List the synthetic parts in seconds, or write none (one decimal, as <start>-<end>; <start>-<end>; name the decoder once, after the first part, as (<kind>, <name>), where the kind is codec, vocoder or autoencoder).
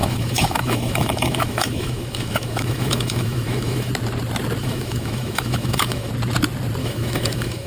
0.0-3.9 (autoencoder, DAC-VAE); 4.6-6.1; 6.8-7.7